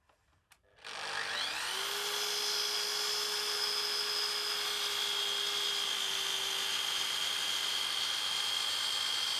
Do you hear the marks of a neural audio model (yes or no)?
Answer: no